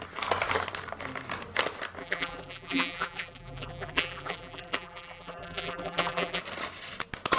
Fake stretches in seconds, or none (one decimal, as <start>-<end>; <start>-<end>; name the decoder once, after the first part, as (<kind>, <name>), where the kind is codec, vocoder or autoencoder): 2.0-6.4 (vocoder, BigVGAN v2)